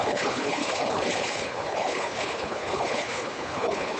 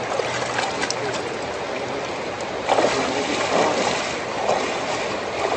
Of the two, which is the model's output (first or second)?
first